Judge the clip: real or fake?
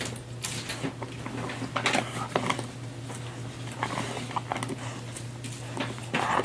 real